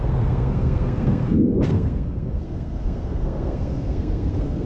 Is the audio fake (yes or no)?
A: yes